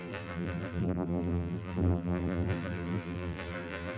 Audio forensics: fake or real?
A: fake